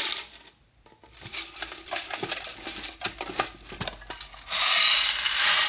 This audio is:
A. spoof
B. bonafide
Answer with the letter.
B